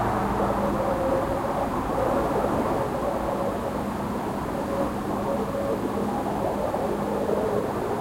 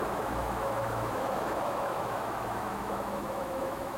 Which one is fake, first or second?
second